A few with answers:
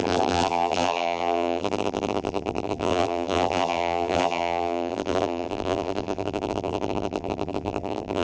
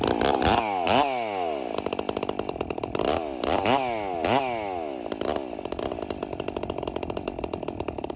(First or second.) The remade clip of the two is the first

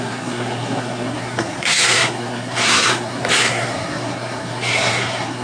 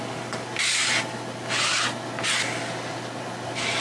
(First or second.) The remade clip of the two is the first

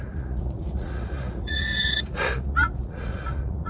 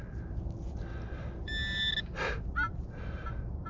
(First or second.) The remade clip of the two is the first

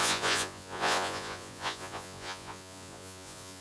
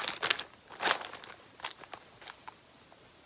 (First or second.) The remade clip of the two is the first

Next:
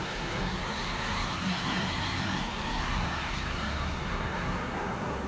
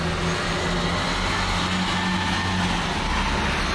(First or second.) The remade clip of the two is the first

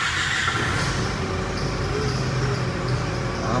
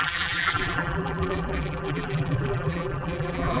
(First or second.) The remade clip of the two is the second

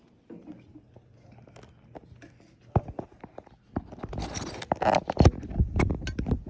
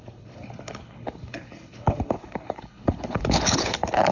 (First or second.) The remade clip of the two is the second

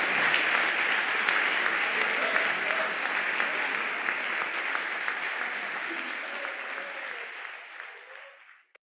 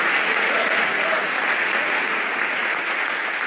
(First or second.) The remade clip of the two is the second